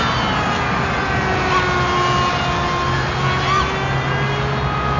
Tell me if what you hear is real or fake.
real